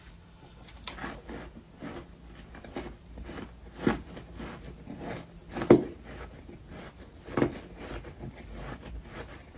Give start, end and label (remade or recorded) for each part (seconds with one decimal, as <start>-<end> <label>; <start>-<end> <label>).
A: 0.0-9.6 recorded